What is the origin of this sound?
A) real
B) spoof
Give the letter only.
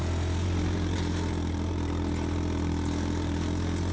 A